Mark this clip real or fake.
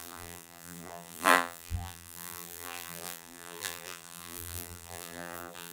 fake